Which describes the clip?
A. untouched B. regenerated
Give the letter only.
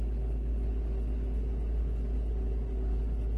A